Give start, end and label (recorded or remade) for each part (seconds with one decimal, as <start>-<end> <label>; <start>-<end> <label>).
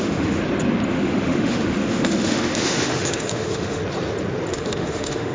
0.0-0.4 remade; 0.4-0.9 recorded; 0.9-3.8 remade; 3.8-4.5 recorded; 4.5-5.3 remade